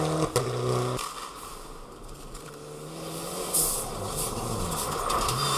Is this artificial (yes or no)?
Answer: no